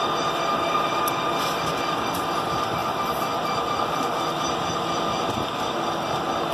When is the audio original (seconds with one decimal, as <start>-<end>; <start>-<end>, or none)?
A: 0.0-6.5